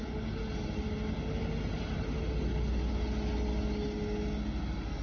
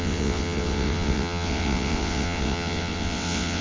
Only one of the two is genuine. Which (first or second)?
first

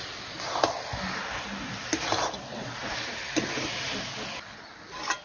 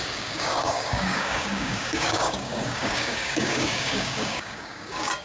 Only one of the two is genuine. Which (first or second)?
first